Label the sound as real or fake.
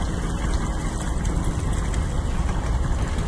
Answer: real